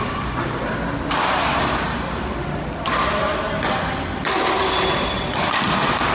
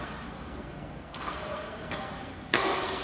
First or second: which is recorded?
first